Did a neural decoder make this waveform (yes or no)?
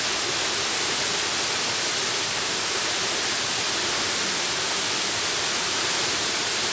no